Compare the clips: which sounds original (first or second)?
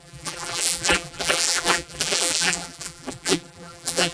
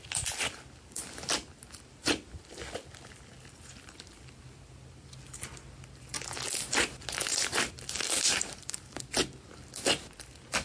second